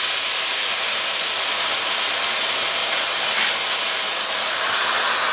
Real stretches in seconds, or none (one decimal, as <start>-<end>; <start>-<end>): 0.0-0.7; 1.2-2.8; 4.5-5.3